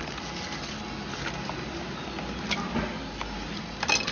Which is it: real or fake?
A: real